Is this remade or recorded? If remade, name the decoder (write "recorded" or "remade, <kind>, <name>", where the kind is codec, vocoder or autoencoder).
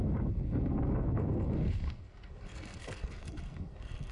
remade, codec, SNAC